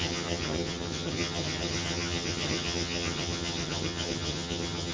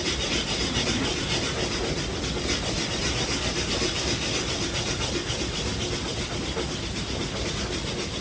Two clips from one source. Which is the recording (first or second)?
second